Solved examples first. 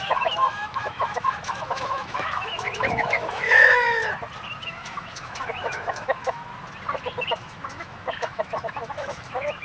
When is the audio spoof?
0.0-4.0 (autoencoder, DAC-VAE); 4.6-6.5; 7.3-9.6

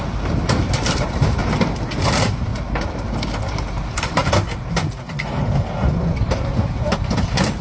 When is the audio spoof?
0.0-1.4 (vocoder, BigVGAN v2); 2.0-2.5; 3.4-4.2; 6.1-7.6